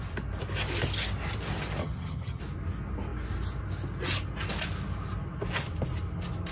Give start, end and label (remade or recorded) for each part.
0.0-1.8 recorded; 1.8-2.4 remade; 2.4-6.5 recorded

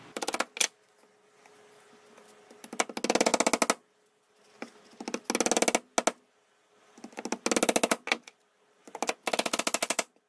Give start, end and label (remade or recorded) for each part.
0.0-10.3 recorded

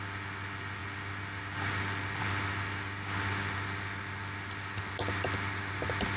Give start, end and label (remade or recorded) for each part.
0.0-6.2 recorded

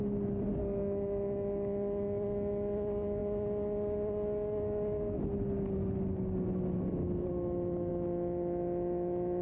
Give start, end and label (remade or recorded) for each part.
0.0-9.4 recorded

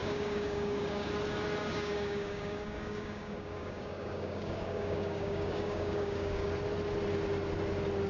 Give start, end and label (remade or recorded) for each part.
0.0-1.1 remade; 1.1-1.6 recorded; 1.6-6.5 remade; 6.5-8.1 recorded

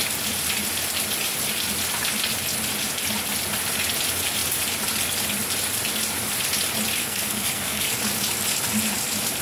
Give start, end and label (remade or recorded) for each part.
0.0-7.0 recorded; 7.0-7.9 remade; 7.9-9.4 recorded

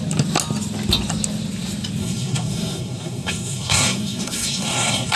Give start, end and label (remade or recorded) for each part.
0.0-2.0 recorded; 2.0-5.2 remade